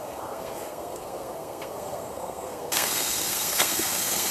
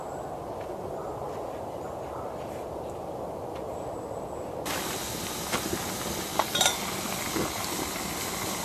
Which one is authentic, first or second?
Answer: second